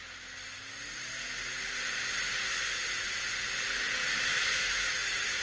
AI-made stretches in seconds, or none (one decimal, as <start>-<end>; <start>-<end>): 4.0-5.4